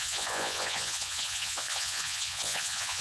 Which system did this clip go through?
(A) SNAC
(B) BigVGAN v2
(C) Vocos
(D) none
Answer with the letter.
C